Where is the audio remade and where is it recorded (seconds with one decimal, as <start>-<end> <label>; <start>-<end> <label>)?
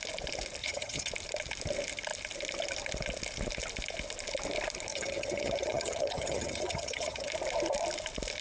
0.0-0.6 recorded; 0.6-1.1 remade; 1.1-4.9 recorded; 4.9-7.3 remade; 7.3-8.4 recorded